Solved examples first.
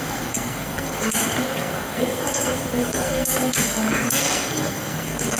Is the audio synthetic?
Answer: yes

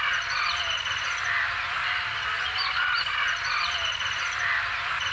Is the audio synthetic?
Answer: no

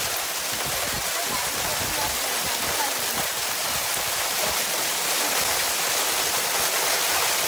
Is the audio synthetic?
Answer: no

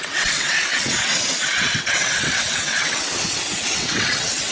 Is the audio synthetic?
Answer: yes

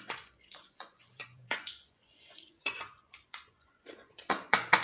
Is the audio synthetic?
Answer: yes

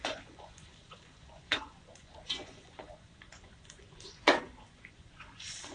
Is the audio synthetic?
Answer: yes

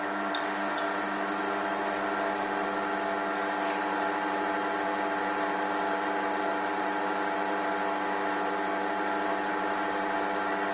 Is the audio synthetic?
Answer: no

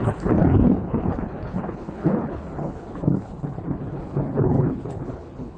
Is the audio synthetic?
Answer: yes